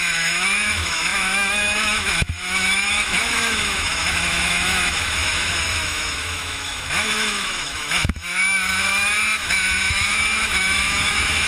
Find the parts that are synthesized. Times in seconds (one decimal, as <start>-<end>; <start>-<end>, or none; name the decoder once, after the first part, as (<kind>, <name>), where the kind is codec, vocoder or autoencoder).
0.0-11.5 (autoencoder, DAC-VAE)

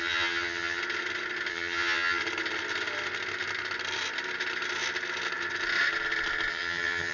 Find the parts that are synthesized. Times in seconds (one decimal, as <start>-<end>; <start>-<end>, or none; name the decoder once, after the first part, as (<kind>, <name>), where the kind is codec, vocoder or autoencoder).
0.0-0.8 (vocoder, HiFi-GAN); 1.5-2.2; 6.5-7.1

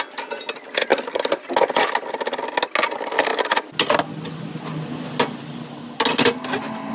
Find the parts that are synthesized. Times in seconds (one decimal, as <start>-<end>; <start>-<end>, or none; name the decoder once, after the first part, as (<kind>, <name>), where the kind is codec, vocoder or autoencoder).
none

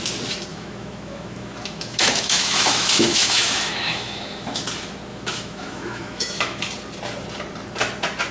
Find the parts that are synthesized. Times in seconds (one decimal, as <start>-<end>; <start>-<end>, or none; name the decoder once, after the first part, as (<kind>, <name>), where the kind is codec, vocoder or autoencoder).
0.5-4.6 (autoencoder, DAC-VAE); 5.1-6.6

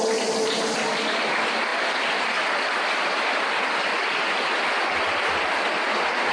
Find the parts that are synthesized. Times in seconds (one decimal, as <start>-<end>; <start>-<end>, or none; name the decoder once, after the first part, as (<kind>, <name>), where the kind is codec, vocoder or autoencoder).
none

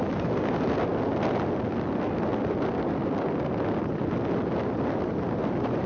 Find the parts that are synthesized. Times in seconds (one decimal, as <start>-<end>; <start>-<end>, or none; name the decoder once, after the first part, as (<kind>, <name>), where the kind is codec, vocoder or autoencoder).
none